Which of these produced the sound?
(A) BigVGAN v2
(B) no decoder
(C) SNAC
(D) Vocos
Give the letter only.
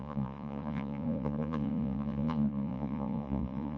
D